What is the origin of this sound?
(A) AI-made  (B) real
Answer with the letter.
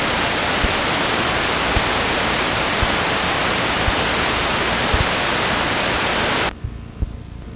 B